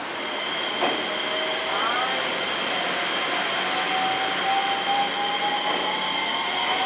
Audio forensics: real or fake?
real